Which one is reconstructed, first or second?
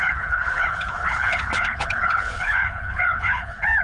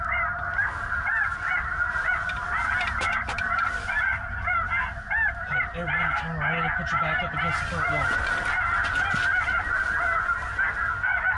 first